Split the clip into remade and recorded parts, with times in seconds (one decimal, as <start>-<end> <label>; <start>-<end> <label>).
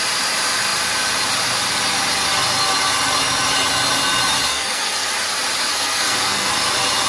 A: 0.0-4.5 recorded; 4.5-5.1 remade; 5.1-5.7 recorded; 5.7-6.5 remade; 6.5-7.1 recorded